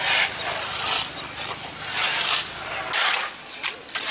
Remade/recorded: recorded